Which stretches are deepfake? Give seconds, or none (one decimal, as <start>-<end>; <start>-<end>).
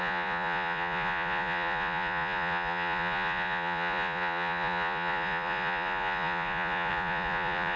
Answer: 0.0-7.8